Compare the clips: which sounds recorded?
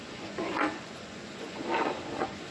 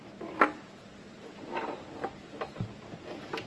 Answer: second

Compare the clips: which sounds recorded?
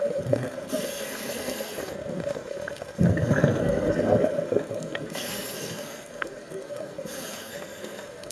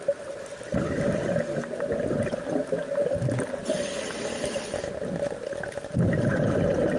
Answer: second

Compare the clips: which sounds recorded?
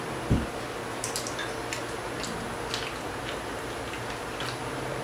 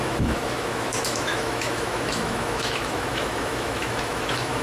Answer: first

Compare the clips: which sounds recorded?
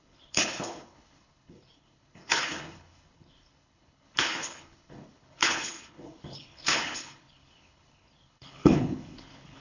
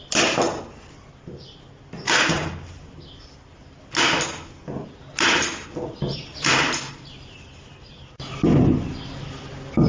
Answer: second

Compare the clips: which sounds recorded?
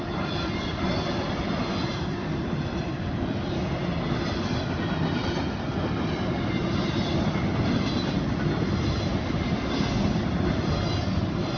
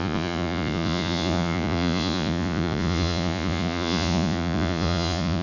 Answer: first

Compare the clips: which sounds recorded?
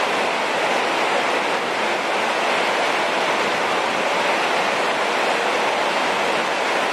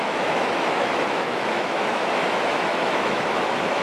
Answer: first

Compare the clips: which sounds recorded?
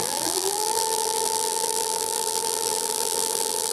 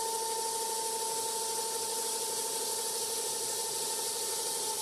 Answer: second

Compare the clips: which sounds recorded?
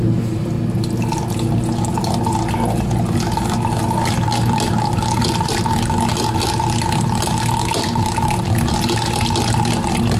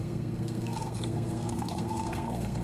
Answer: first